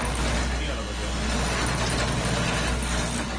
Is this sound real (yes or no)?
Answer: yes